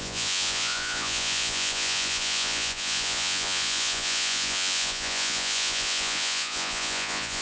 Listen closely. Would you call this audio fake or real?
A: fake